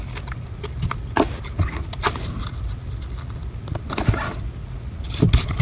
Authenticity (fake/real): real